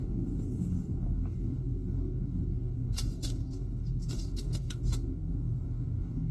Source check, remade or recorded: remade